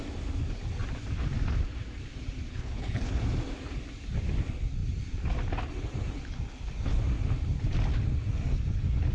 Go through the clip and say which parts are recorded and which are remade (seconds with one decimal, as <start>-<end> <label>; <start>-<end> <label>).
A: 0.0-2.5 recorded; 2.5-3.2 remade; 3.2-9.1 recorded